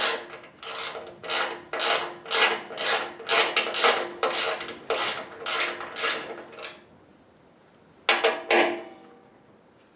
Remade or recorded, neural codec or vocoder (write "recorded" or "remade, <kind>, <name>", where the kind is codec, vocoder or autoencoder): recorded